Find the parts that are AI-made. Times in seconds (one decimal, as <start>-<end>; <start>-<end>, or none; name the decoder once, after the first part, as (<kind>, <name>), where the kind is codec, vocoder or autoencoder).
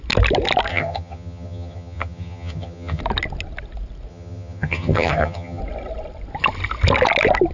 0.7-3.0 (vocoder, HiFi-GAN); 4.1-5.6